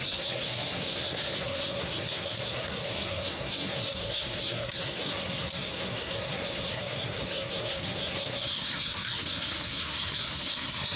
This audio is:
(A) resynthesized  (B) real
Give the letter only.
A